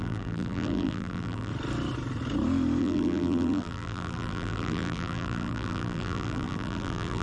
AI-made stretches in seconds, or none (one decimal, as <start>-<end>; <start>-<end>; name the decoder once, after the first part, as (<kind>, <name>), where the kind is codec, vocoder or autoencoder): 0.0-1.5 (vocoder, BigVGAN v2); 2.8-7.2